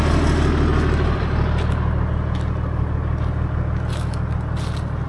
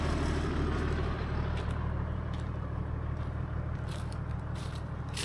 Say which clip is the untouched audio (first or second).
first